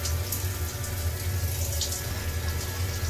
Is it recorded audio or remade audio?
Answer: recorded